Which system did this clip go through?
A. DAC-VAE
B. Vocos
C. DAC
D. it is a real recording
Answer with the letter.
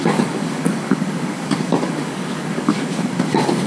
C